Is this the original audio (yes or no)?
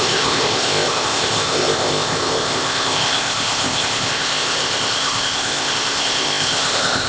no